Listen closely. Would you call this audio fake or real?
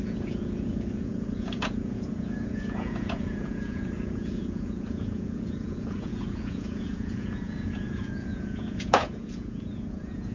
fake